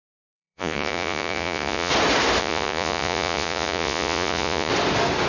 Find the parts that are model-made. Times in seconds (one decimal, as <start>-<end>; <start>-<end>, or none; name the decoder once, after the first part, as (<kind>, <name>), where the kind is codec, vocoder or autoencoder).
0.0-1.9 (vocoder, Vocos); 2.4-4.7